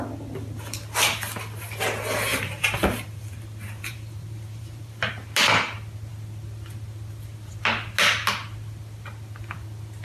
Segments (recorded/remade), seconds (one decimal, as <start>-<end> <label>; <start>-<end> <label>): 0.0-2.3 recorded; 2.3-5.1 remade; 5.1-10.0 recorded